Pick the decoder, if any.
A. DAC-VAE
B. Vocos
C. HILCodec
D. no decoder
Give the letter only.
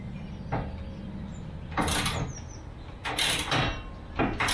D